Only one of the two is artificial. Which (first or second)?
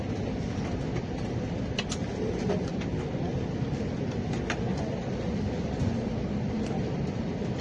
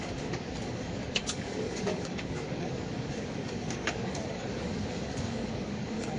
second